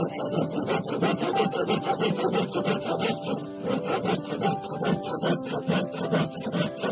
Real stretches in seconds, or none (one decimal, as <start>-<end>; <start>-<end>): 0.0-6.9